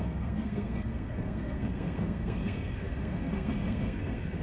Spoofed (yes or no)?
yes